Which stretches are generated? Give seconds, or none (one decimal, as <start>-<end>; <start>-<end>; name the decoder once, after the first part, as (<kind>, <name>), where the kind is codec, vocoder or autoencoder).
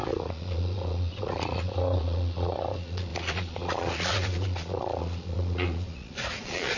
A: 0.0-6.8 (vocoder, Vocos)